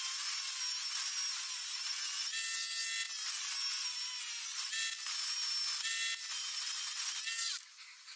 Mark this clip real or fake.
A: real